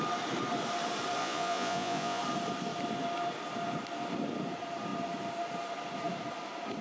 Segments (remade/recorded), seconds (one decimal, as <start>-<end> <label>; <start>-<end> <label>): 0.0-1.2 recorded; 1.2-2.2 remade; 2.2-6.8 recorded